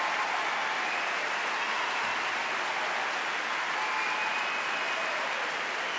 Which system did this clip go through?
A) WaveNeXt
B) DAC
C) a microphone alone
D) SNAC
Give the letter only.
C